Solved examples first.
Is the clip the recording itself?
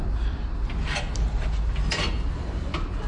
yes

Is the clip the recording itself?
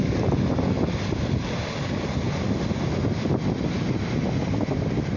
yes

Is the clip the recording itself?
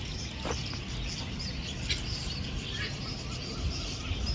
yes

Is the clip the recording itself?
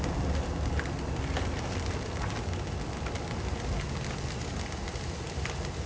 yes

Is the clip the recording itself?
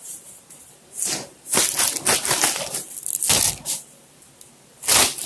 yes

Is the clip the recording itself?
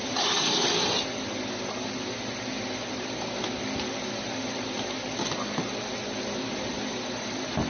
yes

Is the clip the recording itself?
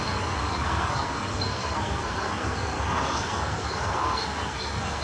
no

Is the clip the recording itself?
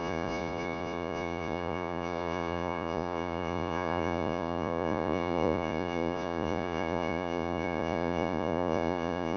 no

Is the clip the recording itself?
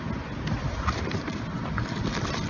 yes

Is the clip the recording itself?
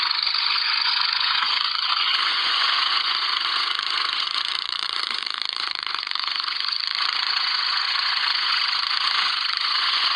no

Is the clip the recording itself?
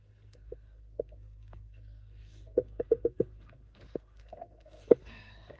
no